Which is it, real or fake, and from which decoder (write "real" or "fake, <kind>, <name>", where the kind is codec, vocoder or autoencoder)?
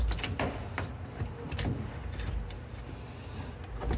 real